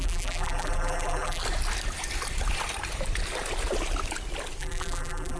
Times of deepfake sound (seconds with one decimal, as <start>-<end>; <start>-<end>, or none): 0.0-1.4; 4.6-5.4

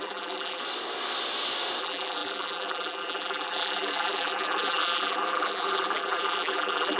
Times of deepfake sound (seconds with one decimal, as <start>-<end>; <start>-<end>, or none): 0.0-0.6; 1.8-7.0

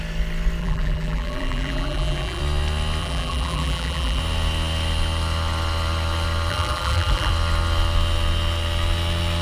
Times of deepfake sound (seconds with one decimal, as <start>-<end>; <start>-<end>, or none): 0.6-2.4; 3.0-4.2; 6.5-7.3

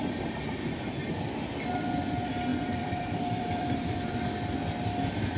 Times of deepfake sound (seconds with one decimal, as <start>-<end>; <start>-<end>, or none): 2.5-4.2

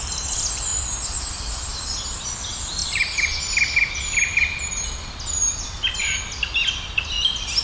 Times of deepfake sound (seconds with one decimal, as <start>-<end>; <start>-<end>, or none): 2.8-3.4